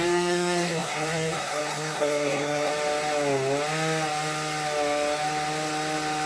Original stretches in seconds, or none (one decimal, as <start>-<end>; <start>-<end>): 2.7-6.3

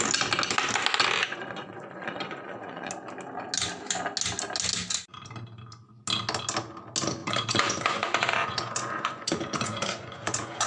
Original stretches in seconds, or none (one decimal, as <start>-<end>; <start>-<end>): 0.0-1.2; 2.9-7.2

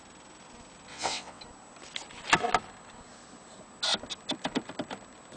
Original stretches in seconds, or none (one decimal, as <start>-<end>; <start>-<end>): 0.0-0.9; 1.4-5.4

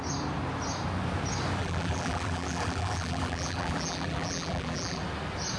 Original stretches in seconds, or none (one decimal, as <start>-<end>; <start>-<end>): 0.0-1.6; 5.0-5.6

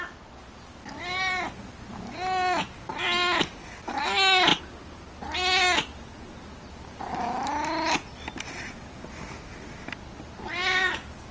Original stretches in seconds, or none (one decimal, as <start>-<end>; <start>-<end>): 0.0-11.3

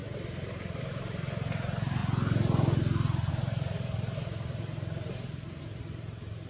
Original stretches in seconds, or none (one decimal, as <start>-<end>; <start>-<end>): 2.0-3.3